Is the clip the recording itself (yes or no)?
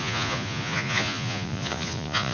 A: no